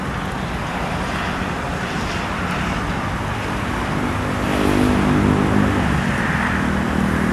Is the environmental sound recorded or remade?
recorded